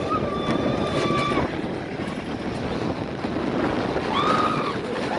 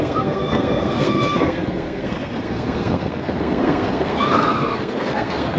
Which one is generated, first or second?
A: second